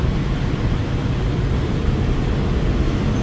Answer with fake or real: real